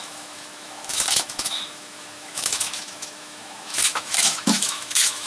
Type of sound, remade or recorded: remade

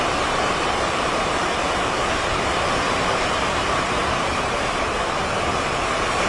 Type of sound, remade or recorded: remade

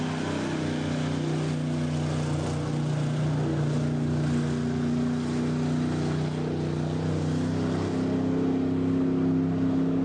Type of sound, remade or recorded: recorded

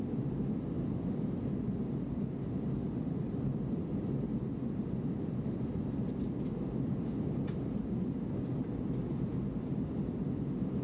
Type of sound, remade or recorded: recorded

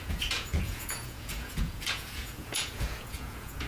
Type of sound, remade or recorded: remade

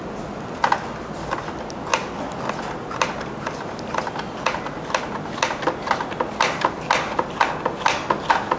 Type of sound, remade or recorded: recorded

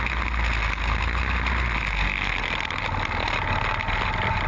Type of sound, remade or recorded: recorded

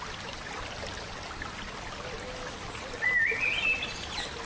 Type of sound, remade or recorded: recorded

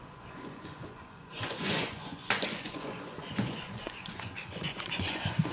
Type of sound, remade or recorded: remade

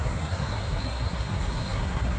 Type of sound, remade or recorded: remade